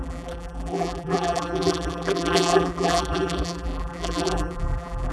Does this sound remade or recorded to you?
remade